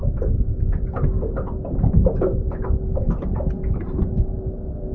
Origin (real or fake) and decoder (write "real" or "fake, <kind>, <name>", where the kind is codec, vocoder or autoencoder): real